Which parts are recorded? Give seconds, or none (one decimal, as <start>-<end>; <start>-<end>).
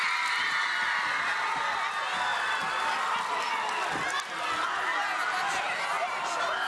0.0-6.7